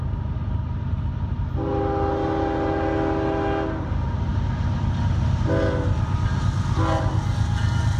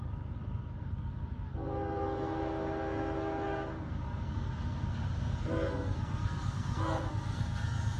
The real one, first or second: first